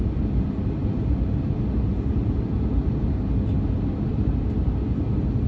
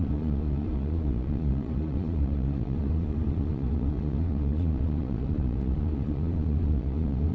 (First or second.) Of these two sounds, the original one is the first